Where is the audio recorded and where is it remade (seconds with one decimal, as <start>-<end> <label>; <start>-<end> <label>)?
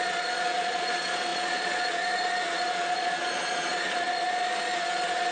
0.0-5.3 remade